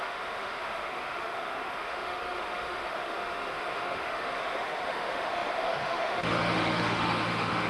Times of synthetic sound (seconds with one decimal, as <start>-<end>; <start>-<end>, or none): 0.0-7.7